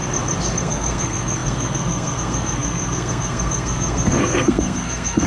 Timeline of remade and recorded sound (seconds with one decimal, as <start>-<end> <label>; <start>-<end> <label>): 0.0-0.6 recorded; 0.6-5.3 remade